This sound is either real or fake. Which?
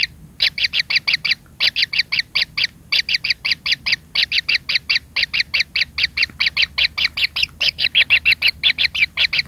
real